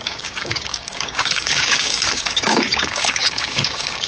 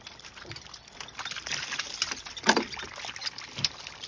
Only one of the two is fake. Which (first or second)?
first